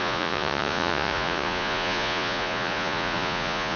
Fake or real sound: fake